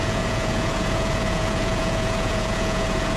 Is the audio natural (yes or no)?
no